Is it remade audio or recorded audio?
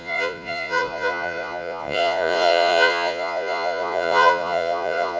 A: remade